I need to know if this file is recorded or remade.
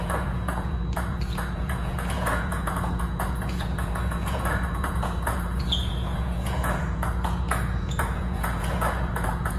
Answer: remade